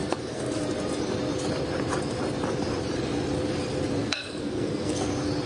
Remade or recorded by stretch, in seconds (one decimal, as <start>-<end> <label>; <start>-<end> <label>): 0.0-0.6 remade; 0.6-4.0 recorded; 4.0-5.1 remade; 5.1-5.5 recorded